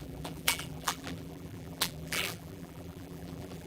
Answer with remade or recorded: remade